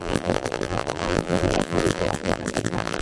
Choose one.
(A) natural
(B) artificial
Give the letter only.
B